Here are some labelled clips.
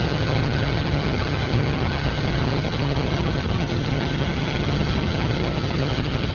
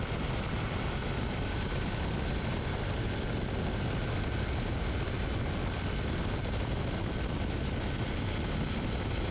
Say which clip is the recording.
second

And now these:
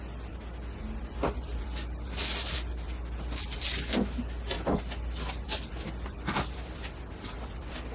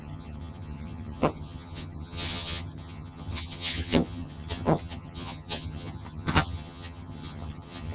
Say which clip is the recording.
first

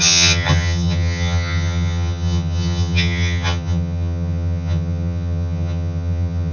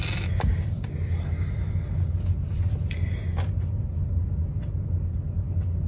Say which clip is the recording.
second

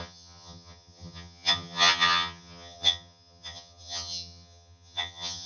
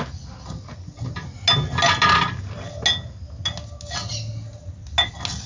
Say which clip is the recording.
second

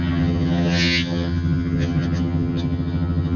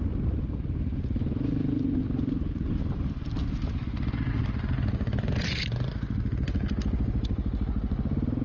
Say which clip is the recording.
second